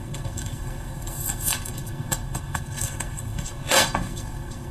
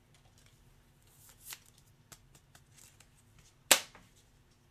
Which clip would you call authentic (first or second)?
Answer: second